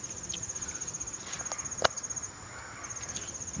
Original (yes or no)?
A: yes